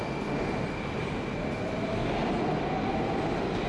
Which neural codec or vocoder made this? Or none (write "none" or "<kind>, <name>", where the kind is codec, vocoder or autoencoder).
none